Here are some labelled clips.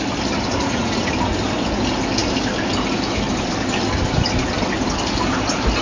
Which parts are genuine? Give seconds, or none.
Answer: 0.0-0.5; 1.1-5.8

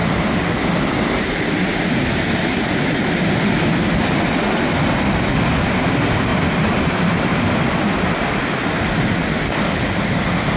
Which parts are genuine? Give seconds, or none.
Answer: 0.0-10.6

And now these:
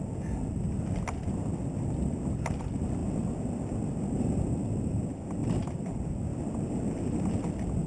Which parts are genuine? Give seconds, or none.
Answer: 0.0-7.9

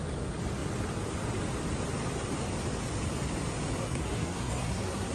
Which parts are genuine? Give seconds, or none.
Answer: 0.0-3.8